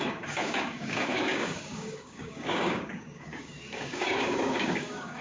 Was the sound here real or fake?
fake